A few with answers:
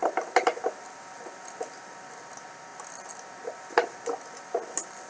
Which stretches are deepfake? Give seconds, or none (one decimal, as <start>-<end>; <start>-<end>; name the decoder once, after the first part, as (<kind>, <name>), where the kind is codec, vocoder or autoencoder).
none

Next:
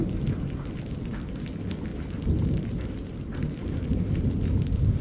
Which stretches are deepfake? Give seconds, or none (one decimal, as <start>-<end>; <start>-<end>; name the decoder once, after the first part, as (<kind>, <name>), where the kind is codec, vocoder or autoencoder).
1.9-5.0 (vocoder, BigVGAN v2)

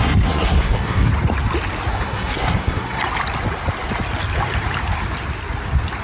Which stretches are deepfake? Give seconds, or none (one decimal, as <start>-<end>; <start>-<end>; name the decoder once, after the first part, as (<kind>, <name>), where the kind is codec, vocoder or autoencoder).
0.0-1.1 (codec, SNAC); 1.9-3.0